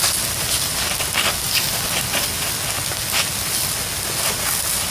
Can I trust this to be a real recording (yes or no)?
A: yes